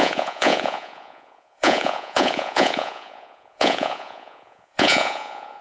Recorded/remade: remade